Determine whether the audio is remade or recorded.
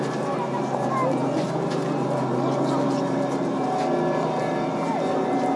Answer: remade